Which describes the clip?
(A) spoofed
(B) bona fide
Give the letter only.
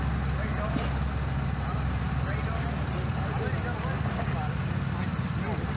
B